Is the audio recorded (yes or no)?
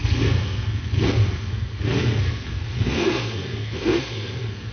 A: no